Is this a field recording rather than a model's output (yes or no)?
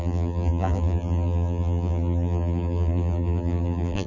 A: no